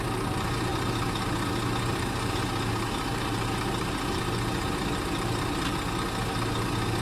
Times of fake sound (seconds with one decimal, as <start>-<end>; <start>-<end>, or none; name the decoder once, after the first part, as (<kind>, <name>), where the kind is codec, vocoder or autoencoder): none